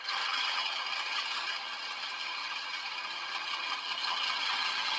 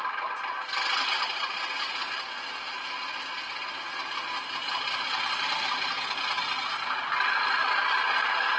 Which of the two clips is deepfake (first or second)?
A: first